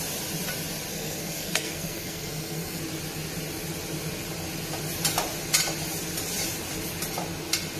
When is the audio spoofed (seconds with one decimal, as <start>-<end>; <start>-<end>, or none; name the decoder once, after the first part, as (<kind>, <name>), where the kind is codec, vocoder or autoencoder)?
0.9-2.8 (codec, SNAC)